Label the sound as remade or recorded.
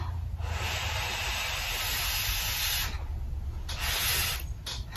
recorded